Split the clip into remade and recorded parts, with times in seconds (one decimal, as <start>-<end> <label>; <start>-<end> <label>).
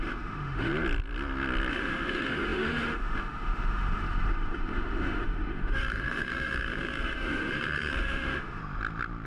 0.0-0.7 remade; 0.7-1.7 recorded; 1.7-8.6 remade; 8.6-9.3 recorded